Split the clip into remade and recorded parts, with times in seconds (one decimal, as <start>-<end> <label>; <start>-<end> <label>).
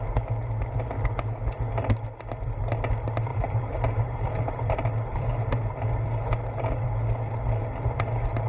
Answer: 0.0-3.3 recorded; 3.3-5.5 remade; 5.5-8.5 recorded